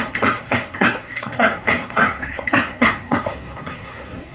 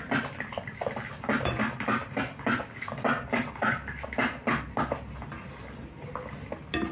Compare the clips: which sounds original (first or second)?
second